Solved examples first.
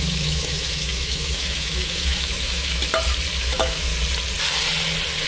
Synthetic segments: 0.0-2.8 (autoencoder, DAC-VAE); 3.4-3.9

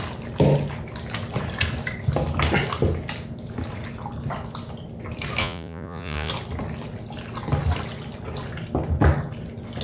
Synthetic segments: 5.4-6.3 (vocoder, Vocos)

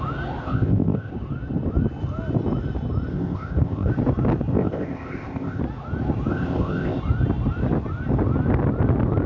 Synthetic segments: 0.4-1.1 (codec, ZipCodec); 3.1-3.9; 4.5-5.6; 6.3-7.0

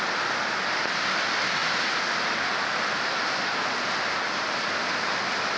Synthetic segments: none

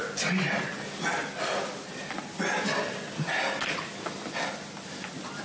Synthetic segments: none

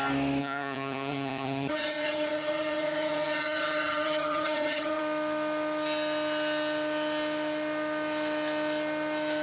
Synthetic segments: 0.4-5.0 (vocoder, HiFi-GAN)